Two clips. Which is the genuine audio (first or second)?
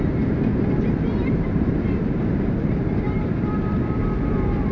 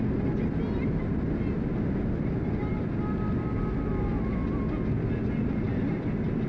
second